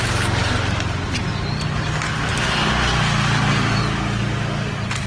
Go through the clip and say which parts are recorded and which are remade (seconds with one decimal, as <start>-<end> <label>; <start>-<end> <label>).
0.0-5.1 recorded